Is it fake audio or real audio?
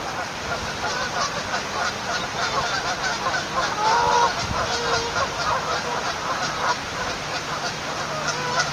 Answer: real